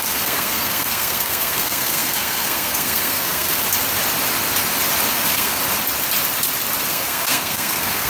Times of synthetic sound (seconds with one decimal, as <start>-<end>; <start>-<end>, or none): 0.0-3.6; 5.1-5.6; 6.9-8.1